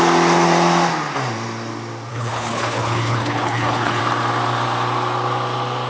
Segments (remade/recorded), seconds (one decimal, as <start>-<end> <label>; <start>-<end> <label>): 0.0-2.1 recorded; 2.1-4.0 remade; 4.0-5.9 recorded